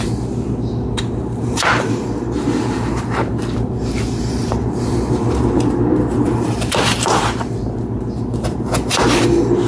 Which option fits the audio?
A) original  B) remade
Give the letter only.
B